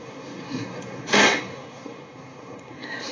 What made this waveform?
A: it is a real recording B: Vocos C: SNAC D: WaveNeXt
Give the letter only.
C